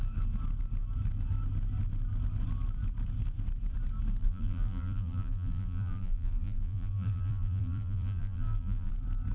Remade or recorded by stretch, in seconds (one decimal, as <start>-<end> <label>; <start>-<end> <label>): 0.0-4.2 recorded; 4.2-8.9 remade; 8.9-9.3 recorded